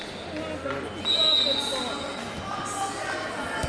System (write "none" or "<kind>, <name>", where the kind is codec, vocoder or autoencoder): none